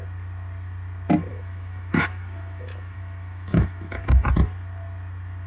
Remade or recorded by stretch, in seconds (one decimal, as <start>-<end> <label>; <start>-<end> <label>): 0.0-1.3 recorded; 1.3-4.3 remade; 4.3-5.5 recorded